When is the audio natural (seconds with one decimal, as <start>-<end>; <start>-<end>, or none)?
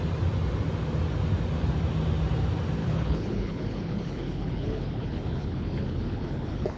0.0-2.8